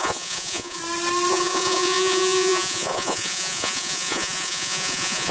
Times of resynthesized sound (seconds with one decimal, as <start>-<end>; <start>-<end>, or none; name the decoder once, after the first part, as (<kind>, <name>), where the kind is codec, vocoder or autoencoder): 0.0-0.8 (vocoder, Vocos); 1.3-5.3